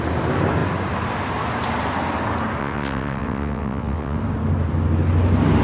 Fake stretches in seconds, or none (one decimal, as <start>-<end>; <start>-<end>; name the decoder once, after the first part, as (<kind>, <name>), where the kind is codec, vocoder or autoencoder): 2.6-4.2 (vocoder, WaveNeXt)